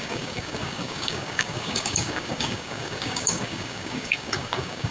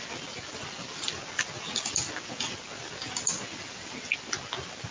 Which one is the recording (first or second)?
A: second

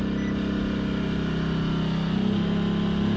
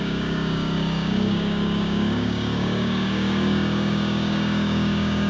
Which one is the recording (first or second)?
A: first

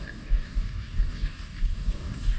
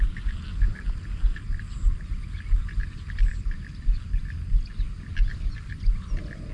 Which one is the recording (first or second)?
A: second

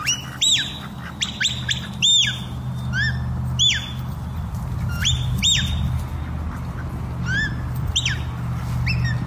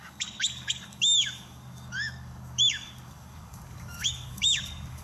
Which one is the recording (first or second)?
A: first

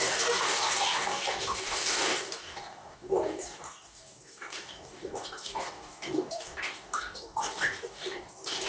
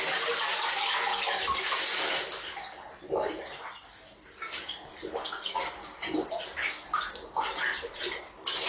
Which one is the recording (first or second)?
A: second